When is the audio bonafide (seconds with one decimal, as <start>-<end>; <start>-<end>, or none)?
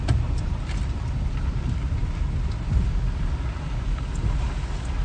0.0-5.0